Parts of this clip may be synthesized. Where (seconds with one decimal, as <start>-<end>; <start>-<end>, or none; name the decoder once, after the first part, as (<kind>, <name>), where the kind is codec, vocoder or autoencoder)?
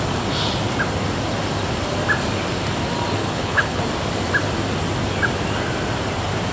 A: 3.2-3.8 (codec, HILCodec)